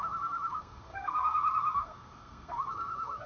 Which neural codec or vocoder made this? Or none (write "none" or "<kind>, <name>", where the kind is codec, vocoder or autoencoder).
codec, SNAC